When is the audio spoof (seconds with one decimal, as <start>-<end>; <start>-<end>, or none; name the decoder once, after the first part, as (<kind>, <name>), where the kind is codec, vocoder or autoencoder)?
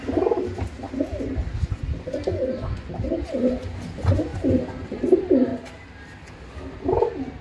none